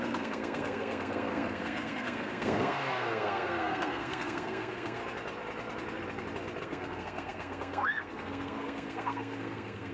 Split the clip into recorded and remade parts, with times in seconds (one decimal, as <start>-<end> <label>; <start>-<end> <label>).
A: 0.0-5.0 remade; 5.0-6.6 recorded; 6.6-9.9 remade